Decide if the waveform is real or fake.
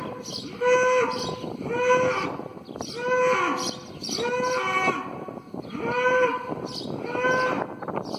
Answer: real